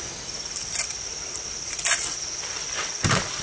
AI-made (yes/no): no